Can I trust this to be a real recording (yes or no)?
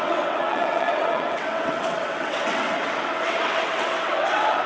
no